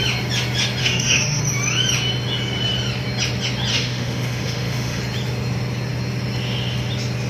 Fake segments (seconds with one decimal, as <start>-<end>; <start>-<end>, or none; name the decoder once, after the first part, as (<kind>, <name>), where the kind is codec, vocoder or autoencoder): 0.8-1.4 (autoencoder, DAC-VAE); 3.7-5.0